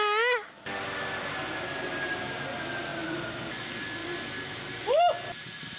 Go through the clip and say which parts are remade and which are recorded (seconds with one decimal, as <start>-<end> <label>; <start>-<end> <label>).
0.0-5.8 recorded